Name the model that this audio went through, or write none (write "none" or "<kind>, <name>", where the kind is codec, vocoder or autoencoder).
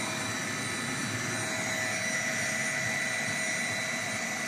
none